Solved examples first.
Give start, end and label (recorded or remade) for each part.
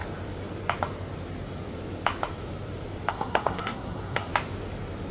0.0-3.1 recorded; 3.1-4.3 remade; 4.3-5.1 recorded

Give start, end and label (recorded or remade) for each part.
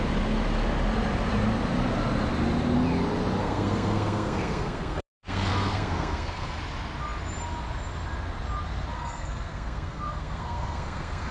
0.0-3.4 recorded; 3.4-6.6 remade; 6.6-8.9 recorded; 8.9-11.3 remade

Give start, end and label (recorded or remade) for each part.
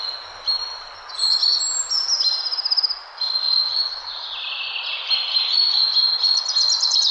0.0-7.1 recorded